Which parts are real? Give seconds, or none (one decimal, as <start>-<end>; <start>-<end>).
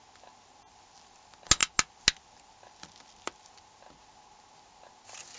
0.0-5.4